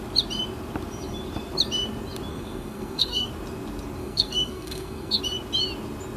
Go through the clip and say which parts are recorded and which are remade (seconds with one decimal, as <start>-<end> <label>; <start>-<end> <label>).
0.0-2.3 recorded; 2.3-3.3 remade; 3.3-4.0 recorded; 4.0-5.2 remade; 5.2-6.2 recorded